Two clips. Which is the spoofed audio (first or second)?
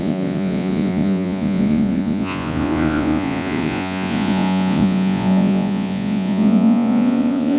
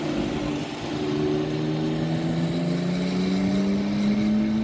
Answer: first